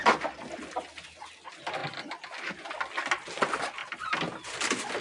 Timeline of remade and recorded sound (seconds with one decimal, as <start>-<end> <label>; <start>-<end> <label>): 0.0-5.0 recorded